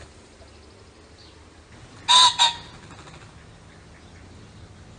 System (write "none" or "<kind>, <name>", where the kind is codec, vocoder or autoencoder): none